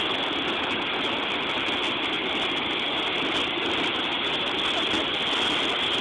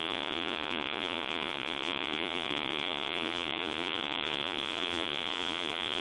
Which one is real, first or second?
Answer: first